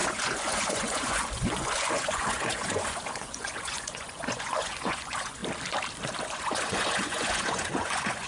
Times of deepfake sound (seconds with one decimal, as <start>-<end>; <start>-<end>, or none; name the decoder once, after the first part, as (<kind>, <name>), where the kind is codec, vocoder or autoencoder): 0.0-5.4 (vocoder, Vocos); 6.2-8.3